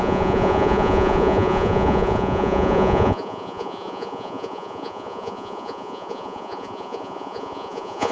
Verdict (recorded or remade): remade